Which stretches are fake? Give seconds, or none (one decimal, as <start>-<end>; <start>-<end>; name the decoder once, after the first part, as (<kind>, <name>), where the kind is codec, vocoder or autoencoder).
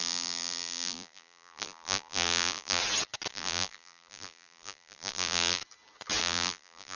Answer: 0.0-2.8 (vocoder, BigVGAN v2); 3.3-5.6; 6.2-7.0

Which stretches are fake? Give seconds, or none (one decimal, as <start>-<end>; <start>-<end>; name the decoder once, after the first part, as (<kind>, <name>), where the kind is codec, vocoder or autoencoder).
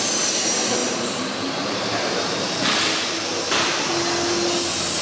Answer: 0.8-3.8 (vocoder, BigVGAN v2)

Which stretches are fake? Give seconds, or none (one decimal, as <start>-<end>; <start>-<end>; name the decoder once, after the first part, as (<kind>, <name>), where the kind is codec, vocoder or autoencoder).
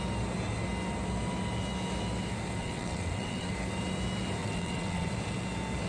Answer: 2.6-3.5 (vocoder, WaveNeXt); 4.4-5.1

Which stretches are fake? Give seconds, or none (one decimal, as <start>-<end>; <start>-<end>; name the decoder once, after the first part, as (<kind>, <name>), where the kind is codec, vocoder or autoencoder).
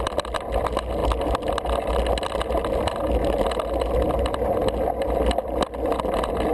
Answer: none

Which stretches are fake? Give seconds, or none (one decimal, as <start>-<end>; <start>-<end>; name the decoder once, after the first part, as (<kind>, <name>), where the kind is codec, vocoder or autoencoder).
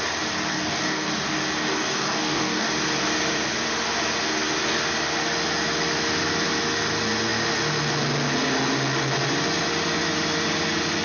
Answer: 0.5-1.1 (codec, DAC); 1.6-2.7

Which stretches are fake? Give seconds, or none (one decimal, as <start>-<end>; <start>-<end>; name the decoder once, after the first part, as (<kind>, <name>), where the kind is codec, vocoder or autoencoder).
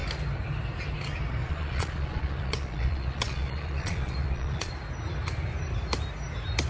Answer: 1.4-4.7 (vocoder, Vocos)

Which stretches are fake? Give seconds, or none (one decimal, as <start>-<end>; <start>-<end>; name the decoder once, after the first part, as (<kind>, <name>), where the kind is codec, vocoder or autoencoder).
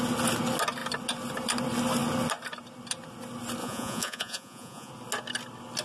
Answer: 3.6-4.9 (vocoder, Vocos)